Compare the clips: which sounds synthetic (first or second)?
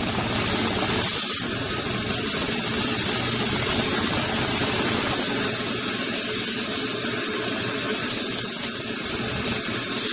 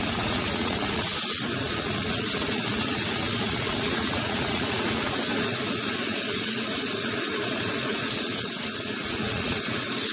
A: second